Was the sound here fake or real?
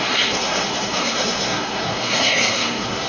fake